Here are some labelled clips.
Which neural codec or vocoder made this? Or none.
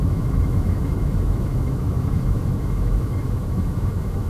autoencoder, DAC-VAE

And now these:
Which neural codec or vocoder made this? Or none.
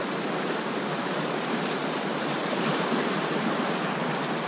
vocoder, BigVGAN v2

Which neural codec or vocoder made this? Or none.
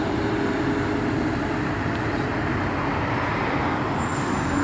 none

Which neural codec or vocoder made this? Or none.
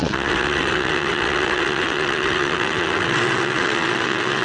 vocoder, WaveNeXt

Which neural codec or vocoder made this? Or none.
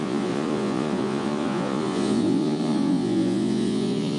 vocoder, Vocos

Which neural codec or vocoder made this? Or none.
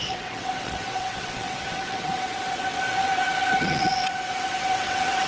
vocoder, WaveNeXt